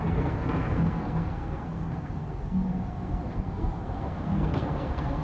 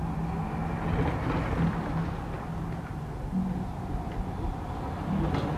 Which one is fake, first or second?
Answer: first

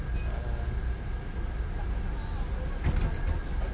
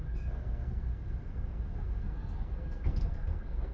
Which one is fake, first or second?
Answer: second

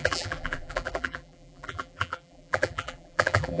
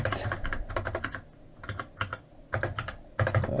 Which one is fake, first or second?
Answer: first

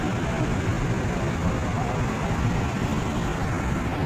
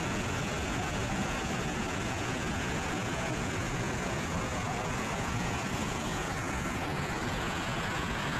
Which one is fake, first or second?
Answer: second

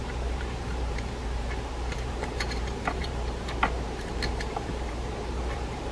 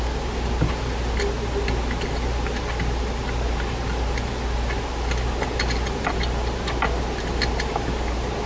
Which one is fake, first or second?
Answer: first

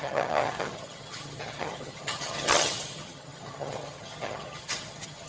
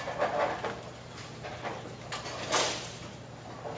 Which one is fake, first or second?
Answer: first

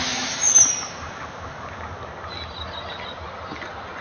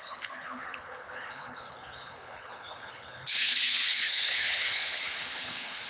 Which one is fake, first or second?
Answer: second